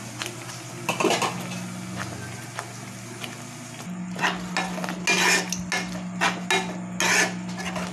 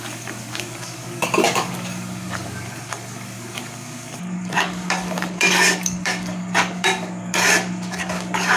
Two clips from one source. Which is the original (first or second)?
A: first